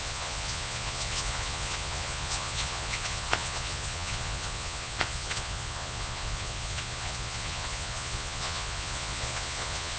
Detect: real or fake fake